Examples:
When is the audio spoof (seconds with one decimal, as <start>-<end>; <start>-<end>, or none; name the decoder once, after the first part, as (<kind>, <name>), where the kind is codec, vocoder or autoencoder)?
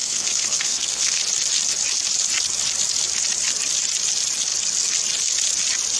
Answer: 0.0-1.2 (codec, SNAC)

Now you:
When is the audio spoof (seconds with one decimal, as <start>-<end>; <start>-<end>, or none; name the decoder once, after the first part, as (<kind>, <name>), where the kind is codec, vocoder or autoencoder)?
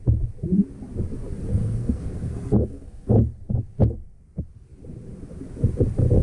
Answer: 1.5-3.1 (codec, SNAC)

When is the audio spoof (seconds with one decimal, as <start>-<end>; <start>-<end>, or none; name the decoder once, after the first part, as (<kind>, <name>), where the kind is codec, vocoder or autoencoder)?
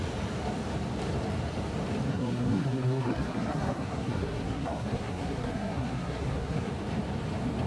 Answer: 2.1-6.7 (codec, SNAC)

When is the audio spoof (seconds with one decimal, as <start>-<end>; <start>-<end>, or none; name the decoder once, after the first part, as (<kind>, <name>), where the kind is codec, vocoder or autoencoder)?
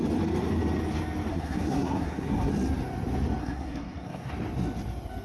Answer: 1.3-2.5 (codec, SNAC); 3.4-4.3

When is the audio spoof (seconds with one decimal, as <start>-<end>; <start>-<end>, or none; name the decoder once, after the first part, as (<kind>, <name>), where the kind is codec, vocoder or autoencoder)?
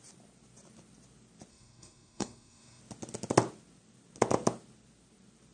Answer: 1.5-2.8 (codec, SNAC)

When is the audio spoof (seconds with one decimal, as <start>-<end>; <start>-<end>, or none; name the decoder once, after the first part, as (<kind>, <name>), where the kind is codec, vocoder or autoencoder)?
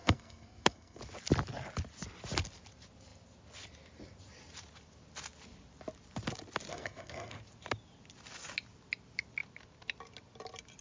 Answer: 0.0-1.0 (codec, SNAC); 6.7-7.3